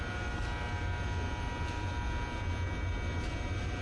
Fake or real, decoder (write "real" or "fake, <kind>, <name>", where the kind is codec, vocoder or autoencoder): real